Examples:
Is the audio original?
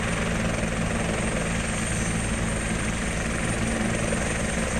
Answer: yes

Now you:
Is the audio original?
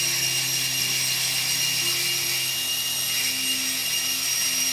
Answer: yes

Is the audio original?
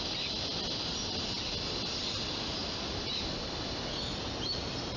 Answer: yes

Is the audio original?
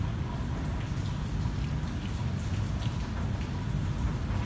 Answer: yes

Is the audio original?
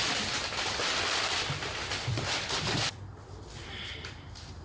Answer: no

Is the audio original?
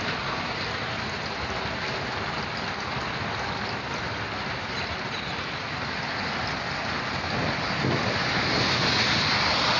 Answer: yes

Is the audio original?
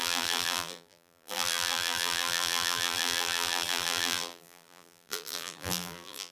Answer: no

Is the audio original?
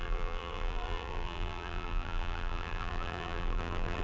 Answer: no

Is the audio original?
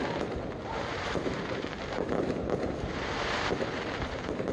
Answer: no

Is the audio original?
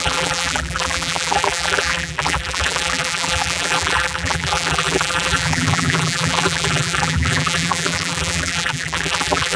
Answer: no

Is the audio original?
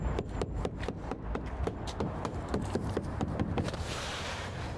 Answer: no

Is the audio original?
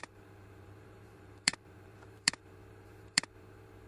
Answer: no